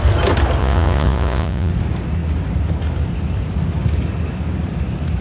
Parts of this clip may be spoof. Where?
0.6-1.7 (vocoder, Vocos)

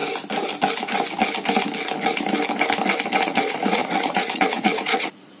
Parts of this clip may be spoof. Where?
3.2-5.4 (vocoder, Vocos)

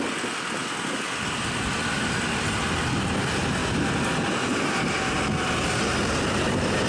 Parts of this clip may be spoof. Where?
none

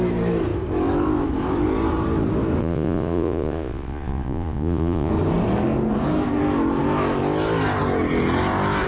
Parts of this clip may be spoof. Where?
2.6-5.1 (vocoder, Vocos)